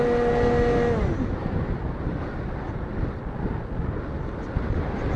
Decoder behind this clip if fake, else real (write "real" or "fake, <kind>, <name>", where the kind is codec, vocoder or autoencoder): real